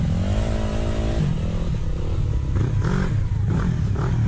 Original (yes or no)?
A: yes